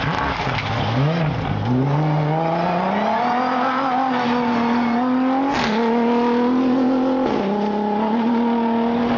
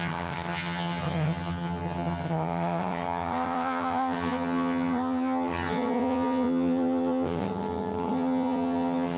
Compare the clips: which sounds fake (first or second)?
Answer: second